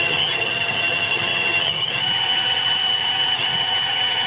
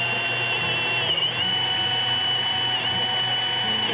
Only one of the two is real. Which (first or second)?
second